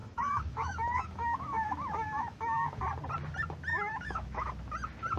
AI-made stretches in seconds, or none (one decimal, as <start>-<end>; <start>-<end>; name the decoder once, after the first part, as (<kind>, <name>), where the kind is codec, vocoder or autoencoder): 0.0-2.8 (autoencoder, DAC-VAE); 3.7-4.5